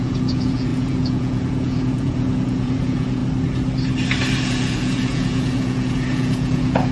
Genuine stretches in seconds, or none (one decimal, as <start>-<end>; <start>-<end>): 3.2-4.4